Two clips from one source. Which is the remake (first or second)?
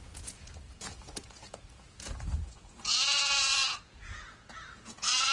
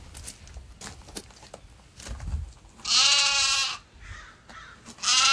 first